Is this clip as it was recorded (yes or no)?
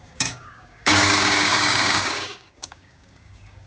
no